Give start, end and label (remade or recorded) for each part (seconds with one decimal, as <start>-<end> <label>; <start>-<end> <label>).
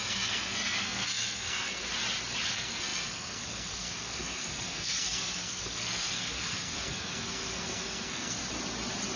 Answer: 0.0-1.8 remade; 1.8-2.5 recorded; 2.5-8.4 remade; 8.4-9.2 recorded